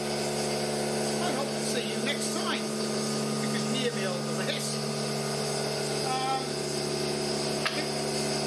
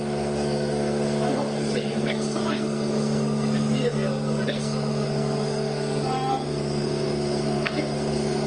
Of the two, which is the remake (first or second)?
second